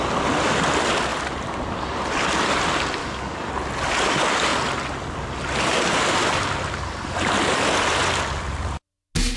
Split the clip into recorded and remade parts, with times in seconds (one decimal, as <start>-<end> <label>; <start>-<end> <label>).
0.0-3.0 recorded; 3.0-3.5 remade; 3.5-9.4 recorded